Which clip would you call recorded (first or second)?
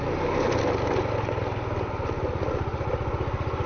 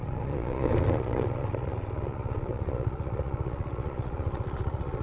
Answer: first